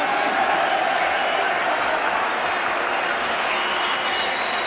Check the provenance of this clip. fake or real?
real